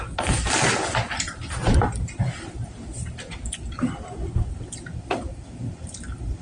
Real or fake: real